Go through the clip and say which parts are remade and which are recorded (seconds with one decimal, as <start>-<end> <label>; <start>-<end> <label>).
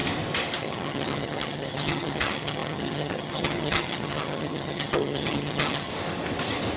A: 0.0-0.6 recorded; 0.6-5.9 remade; 5.9-6.8 recorded